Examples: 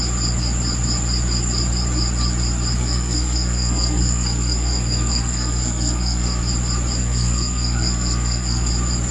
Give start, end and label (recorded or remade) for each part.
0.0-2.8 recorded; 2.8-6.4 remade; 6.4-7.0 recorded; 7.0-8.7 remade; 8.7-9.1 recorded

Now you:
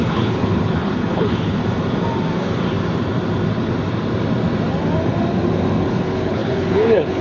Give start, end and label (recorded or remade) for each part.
0.0-1.6 remade; 1.6-5.9 recorded; 5.9-7.2 remade

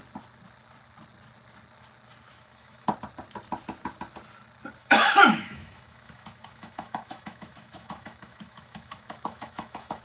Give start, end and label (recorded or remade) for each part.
0.0-2.3 recorded; 2.3-2.9 remade; 2.9-4.8 recorded; 4.8-10.0 remade

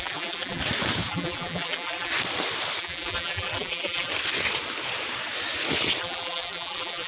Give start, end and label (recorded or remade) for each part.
0.0-0.6 remade; 0.6-1.1 recorded; 1.1-2.1 remade; 2.1-2.8 recorded; 2.8-4.1 remade; 4.1-6.0 recorded; 6.0-7.1 remade